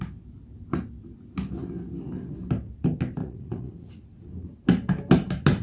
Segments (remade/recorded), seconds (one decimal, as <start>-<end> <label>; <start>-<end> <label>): 0.0-3.2 recorded; 3.2-4.3 remade; 4.3-5.6 recorded